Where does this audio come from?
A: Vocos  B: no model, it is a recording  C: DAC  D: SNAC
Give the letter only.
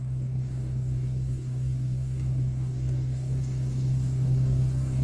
C